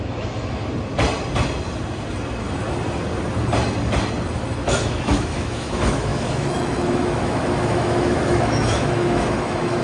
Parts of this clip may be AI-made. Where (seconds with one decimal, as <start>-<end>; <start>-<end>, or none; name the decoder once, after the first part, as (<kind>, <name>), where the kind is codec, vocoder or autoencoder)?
0.0-0.6 (autoencoder, DAC-VAE); 4.7-9.8